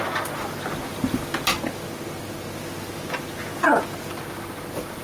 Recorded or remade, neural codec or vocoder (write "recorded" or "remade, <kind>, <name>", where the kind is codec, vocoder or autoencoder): recorded